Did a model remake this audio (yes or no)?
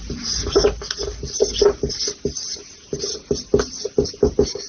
no